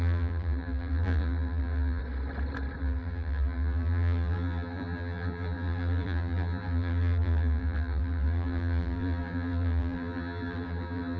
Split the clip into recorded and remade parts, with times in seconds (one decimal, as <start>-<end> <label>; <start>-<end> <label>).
0.0-2.0 remade; 2.0-2.8 recorded; 2.8-11.2 remade